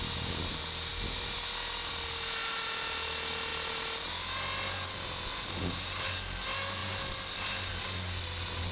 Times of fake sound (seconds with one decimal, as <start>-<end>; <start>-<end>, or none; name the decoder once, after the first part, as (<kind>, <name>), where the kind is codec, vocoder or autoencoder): none